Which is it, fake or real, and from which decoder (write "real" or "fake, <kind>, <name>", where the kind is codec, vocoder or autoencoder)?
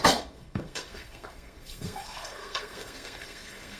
fake, codec, SNAC